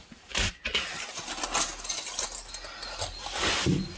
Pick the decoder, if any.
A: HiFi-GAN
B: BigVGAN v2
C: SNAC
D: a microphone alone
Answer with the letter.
D